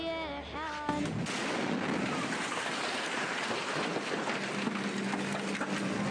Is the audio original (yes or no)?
yes